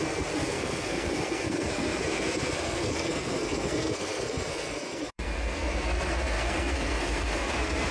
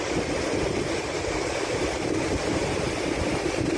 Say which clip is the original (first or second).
second